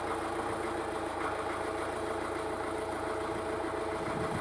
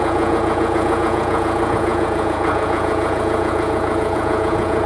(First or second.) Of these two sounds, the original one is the first